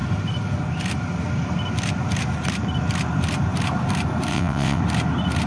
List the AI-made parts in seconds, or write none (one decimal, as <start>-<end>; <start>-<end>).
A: 4.3-4.8